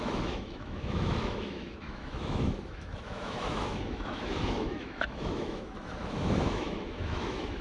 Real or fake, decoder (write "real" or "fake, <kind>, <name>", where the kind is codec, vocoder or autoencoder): fake, autoencoder, DAC-VAE